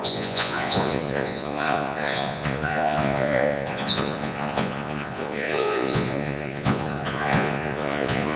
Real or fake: fake